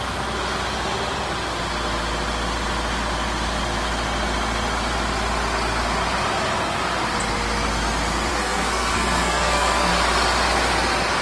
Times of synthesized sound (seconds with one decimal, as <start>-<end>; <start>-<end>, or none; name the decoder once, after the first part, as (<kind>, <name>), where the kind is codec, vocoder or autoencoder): 8.3-9.9 (codec, SNAC)